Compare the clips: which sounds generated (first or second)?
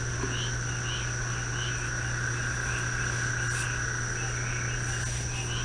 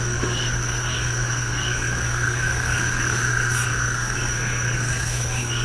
second